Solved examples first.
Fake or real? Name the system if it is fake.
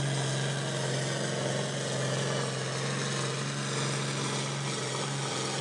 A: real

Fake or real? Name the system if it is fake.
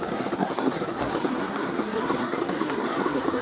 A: fake, codec, SNAC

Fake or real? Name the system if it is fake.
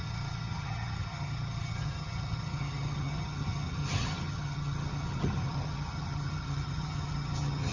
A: fake, vocoder, HiFi-GAN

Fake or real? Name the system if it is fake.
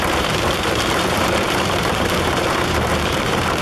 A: fake, vocoder, BigVGAN v2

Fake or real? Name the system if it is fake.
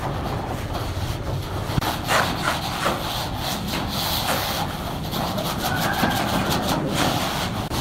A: real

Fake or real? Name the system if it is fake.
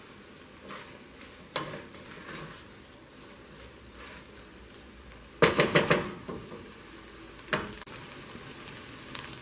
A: real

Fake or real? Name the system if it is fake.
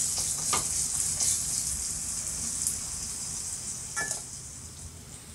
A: real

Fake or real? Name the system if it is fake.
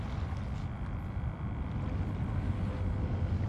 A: real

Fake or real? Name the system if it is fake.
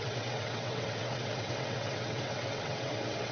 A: fake, vocoder, WaveNeXt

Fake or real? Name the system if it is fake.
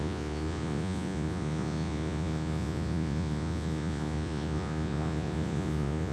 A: fake, vocoder, Vocos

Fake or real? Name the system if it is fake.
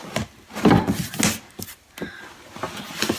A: real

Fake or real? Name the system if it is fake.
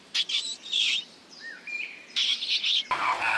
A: fake, vocoder, BigVGAN v2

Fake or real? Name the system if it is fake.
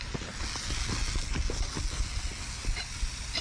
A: real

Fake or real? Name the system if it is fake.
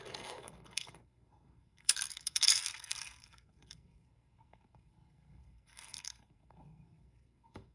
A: fake, codec, SNAC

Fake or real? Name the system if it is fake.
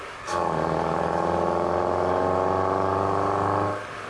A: fake, codec, DAC